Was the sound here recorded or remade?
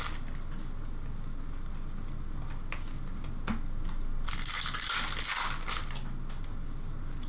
recorded